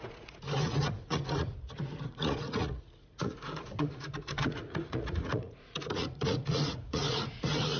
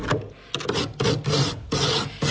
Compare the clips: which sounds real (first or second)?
second